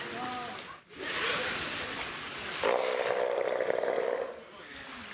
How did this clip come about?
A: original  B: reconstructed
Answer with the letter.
A